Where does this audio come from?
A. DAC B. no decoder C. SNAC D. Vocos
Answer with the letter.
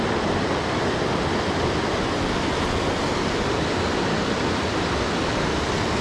B